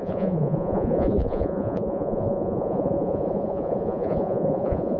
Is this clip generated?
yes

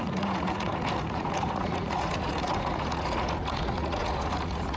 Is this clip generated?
yes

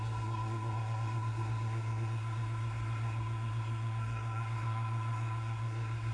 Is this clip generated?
yes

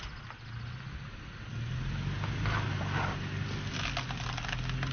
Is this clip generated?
no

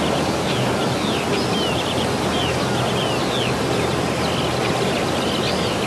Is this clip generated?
no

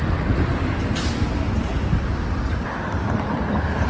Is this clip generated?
no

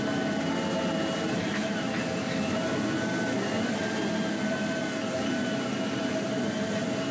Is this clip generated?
no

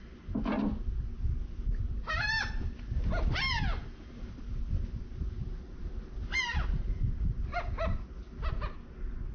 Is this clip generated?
no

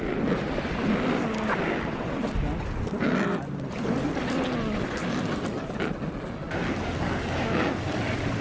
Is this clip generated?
no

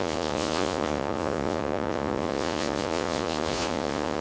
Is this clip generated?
yes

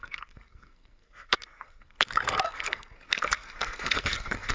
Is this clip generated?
yes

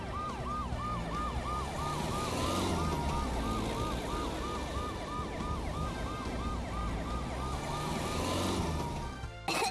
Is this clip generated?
no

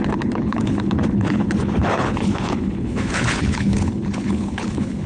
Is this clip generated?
yes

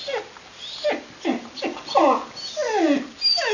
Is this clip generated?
no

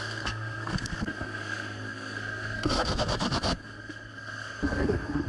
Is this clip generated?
yes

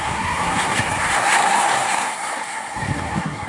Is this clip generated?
yes